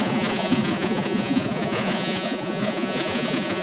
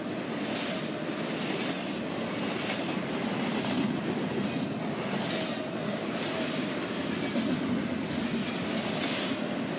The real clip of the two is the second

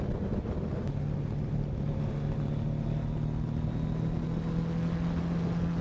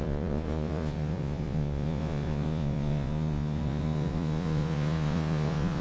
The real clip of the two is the first